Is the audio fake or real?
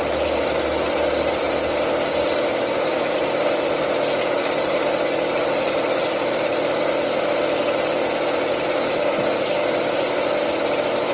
real